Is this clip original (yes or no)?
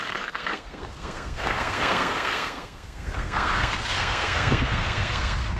no